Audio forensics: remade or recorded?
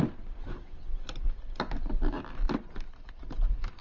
recorded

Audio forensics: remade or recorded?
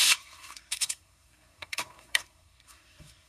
remade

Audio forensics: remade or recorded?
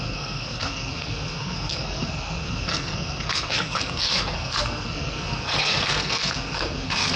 remade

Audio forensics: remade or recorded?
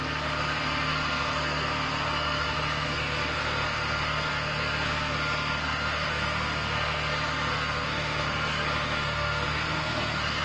remade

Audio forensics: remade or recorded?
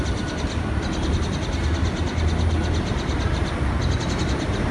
recorded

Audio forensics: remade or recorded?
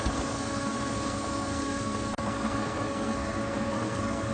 remade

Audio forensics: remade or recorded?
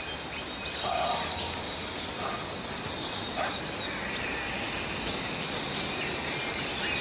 recorded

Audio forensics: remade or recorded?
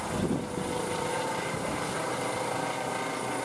recorded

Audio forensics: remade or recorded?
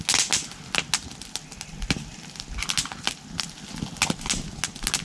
recorded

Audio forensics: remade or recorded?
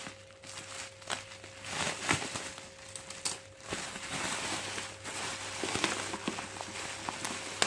recorded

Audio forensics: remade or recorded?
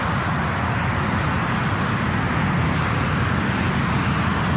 recorded